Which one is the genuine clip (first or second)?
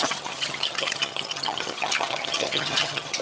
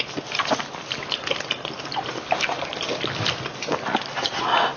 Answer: second